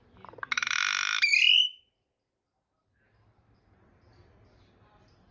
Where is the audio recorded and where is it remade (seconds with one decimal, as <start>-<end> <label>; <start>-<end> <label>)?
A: 0.0-5.3 recorded